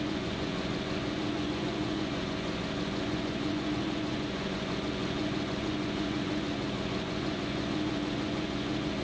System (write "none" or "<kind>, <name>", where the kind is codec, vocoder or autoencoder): vocoder, Vocos